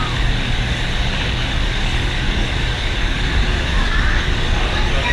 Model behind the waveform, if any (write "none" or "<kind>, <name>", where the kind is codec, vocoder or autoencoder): codec, DAC